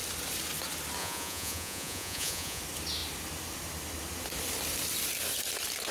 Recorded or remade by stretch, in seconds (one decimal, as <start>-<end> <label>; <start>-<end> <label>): 0.0-1.0 recorded; 1.0-2.6 remade; 2.6-5.9 recorded